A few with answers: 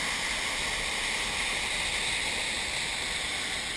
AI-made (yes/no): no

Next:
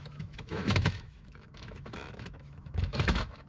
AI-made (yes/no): yes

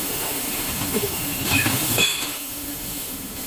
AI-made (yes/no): yes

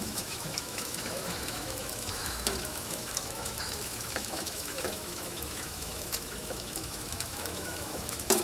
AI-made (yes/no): yes